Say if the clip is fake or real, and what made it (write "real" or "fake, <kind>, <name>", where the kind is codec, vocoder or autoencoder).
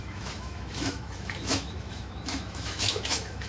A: fake, autoencoder, DAC-VAE